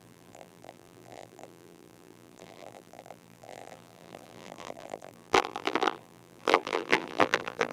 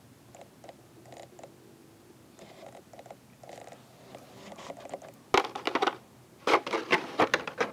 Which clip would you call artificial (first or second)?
first